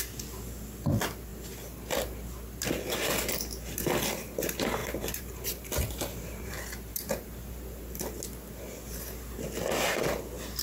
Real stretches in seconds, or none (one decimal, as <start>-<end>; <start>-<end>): 0.0-4.8; 6.5-6.9; 7.8-10.6